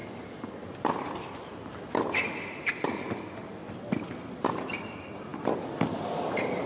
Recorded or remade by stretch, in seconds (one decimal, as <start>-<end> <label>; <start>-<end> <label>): 0.0-6.7 recorded